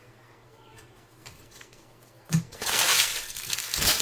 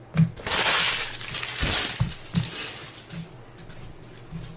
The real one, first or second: second